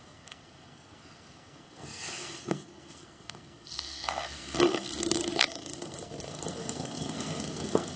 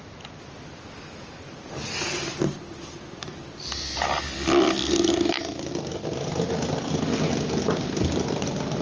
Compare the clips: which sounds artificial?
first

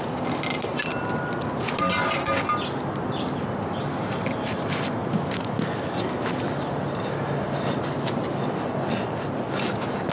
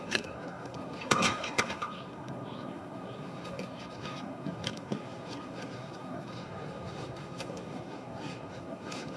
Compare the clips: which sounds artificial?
second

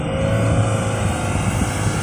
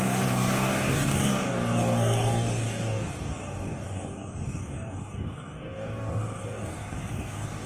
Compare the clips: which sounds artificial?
second